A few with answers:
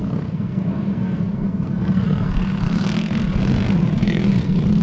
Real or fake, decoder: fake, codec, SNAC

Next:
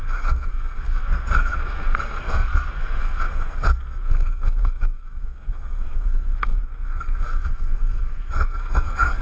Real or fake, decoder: fake, codec, SNAC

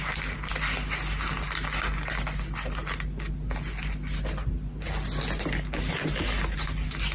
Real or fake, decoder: real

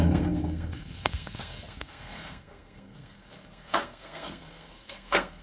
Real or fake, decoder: fake, codec, SNAC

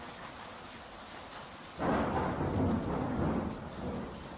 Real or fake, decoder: real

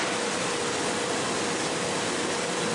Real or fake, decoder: real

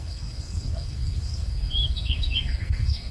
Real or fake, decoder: fake, codec, SNAC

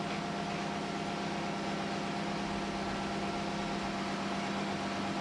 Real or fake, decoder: real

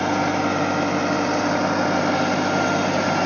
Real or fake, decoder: real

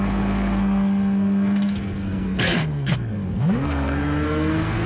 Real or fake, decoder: fake, codec, SNAC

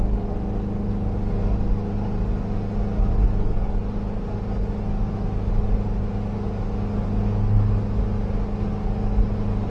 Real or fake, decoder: real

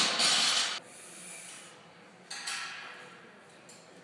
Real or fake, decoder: real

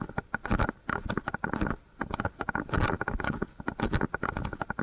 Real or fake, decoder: real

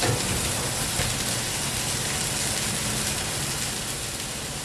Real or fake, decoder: real